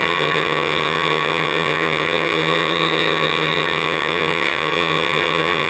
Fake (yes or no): yes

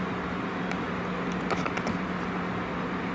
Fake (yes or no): no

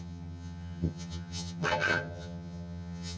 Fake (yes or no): yes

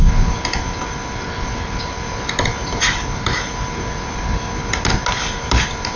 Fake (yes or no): no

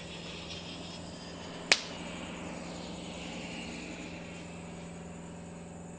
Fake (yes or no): no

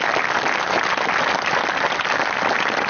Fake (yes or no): no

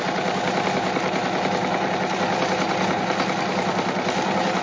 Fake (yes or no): no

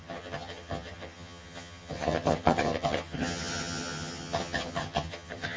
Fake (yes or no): yes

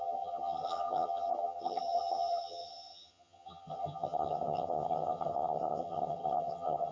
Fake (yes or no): yes